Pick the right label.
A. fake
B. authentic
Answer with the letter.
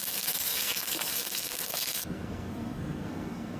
A